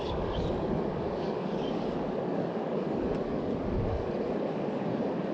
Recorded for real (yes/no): no